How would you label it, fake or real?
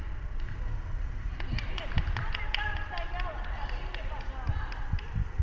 real